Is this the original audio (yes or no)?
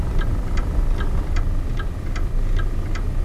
yes